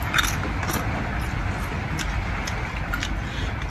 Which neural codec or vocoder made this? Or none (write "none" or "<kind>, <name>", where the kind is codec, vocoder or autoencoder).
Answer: none